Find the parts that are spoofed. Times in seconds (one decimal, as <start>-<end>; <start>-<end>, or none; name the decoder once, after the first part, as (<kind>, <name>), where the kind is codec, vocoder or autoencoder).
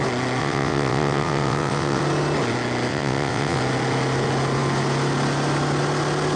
0.4-2.0 (vocoder, WaveNeXt); 2.9-3.6